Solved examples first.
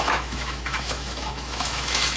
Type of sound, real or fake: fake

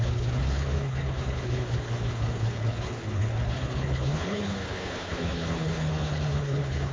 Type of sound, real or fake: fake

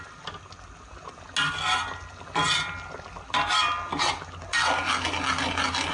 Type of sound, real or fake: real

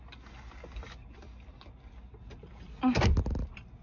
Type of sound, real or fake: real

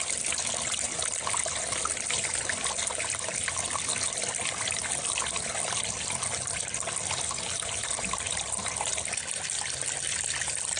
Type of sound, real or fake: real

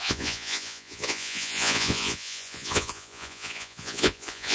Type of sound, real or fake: fake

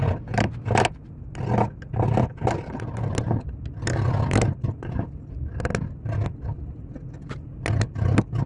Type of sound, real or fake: real